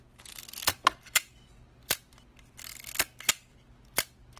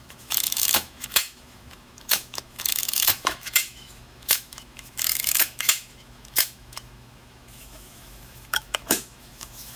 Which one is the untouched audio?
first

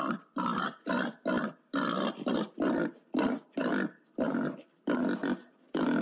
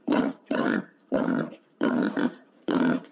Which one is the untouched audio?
first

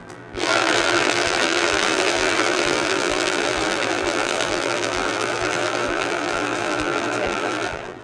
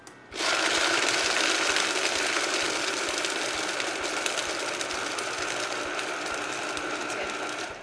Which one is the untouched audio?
second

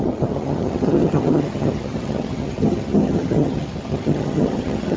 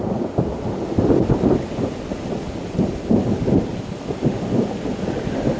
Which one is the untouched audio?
second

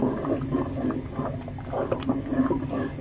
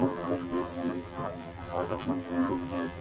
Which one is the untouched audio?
first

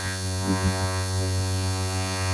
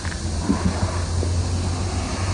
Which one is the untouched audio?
second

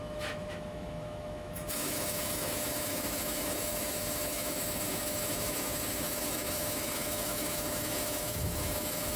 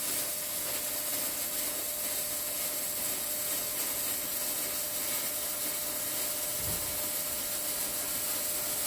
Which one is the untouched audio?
second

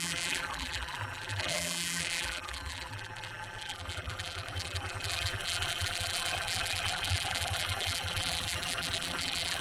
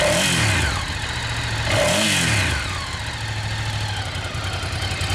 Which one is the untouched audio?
second